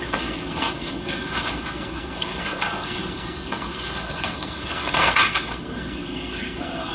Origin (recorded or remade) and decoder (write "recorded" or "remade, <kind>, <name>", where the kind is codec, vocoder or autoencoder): remade, codec, SNAC